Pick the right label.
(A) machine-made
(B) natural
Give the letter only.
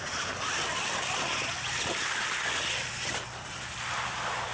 B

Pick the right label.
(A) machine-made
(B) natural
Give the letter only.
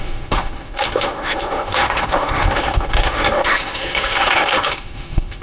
A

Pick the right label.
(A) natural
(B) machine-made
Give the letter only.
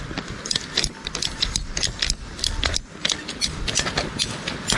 A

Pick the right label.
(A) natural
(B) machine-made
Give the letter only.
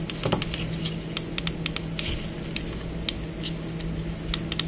A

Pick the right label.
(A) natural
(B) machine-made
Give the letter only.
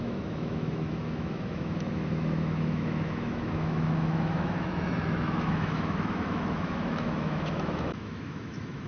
B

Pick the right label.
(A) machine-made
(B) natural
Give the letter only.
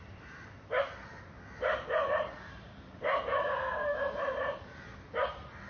A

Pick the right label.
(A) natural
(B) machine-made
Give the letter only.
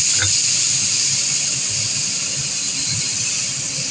A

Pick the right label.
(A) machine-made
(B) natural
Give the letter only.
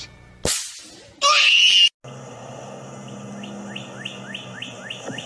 B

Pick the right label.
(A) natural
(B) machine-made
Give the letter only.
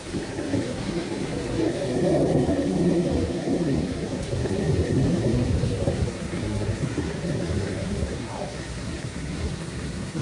B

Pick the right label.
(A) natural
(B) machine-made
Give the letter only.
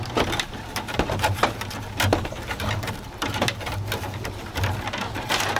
B